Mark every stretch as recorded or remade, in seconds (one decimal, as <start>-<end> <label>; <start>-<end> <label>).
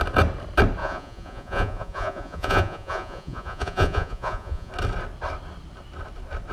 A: 0.0-0.8 recorded; 0.8-4.7 remade; 4.7-6.5 recorded